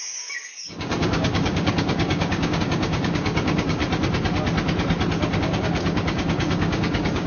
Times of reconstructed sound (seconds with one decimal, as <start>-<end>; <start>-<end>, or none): 0.0-3.8; 5.4-7.3